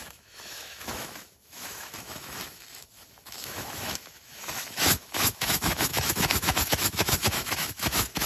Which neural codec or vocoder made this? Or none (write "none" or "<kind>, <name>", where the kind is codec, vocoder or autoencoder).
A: autoencoder, DAC-VAE